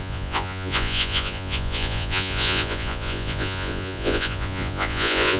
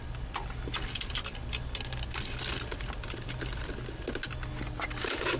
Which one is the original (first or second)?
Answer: second